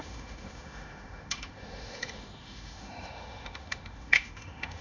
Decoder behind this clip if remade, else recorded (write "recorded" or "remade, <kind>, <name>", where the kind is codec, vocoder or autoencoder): remade, autoencoder, DAC-VAE